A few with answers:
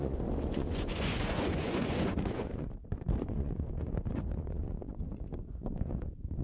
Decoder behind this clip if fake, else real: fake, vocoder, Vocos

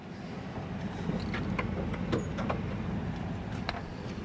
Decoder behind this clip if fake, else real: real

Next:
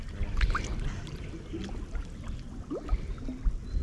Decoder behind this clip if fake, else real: real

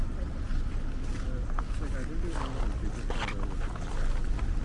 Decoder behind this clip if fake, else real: real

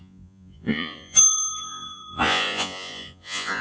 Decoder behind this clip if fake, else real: fake, vocoder, Vocos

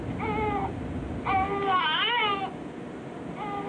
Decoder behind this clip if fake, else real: real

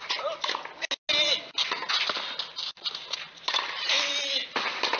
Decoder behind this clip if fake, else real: real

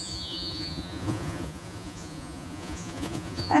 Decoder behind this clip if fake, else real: fake, vocoder, Vocos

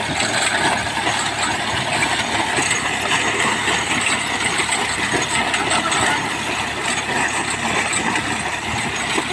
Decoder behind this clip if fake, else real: real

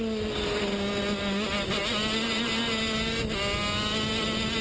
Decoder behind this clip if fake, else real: real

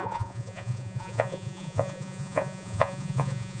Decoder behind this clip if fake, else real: fake, vocoder, Vocos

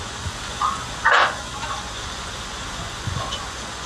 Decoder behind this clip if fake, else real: fake, vocoder, Vocos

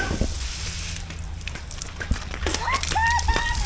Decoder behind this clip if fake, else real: real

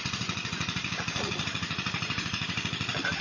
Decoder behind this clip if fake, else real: fake, vocoder, Vocos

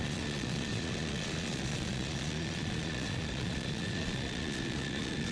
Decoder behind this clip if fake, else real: fake, vocoder, Vocos